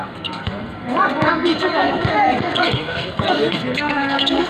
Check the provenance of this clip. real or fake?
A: fake